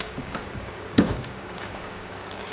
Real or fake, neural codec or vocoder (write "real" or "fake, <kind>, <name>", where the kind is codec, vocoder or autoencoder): fake, codec, DAC